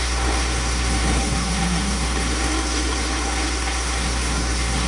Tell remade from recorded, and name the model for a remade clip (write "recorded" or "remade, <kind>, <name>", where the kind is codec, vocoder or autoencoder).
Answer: remade, codec, SNAC